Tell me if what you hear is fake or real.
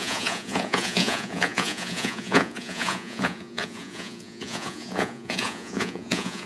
fake